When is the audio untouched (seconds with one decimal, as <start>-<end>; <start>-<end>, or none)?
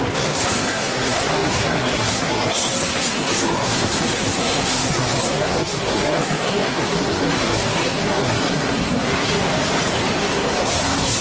9.5-10.2